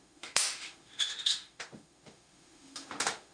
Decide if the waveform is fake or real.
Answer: fake